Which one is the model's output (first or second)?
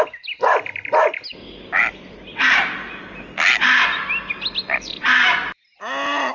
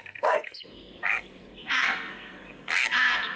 second